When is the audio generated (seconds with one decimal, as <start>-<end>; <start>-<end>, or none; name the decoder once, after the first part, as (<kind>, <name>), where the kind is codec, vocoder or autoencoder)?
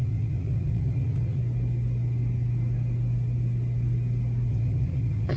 0.0-1.4 (vocoder, Vocos); 4.5-5.4